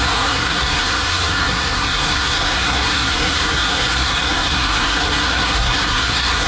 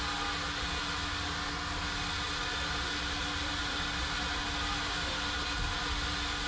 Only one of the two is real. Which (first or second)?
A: second